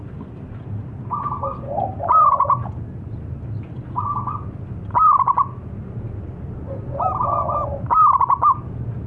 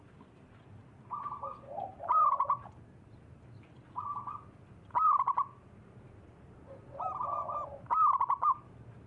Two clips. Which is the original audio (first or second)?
first